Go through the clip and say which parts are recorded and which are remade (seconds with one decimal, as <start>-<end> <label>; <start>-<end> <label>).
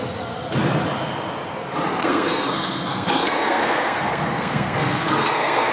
0.0-2.0 recorded; 2.0-5.7 remade